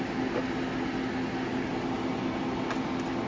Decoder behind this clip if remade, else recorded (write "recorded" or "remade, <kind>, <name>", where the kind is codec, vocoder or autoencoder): recorded